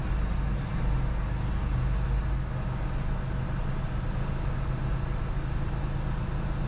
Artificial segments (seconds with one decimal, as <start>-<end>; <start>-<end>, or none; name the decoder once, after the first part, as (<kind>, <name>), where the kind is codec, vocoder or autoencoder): none